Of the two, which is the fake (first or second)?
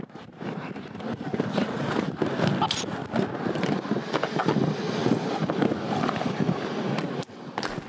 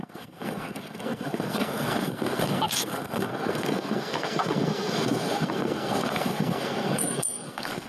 second